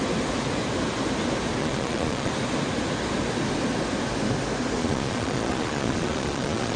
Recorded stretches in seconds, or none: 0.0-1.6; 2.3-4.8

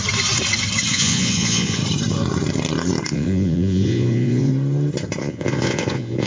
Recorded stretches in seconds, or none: 0.0-0.9; 1.8-3.1; 4.5-5.2

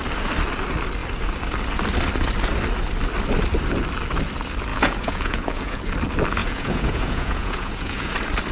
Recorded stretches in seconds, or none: 0.0-4.7; 5.8-6.4; 8.1-8.5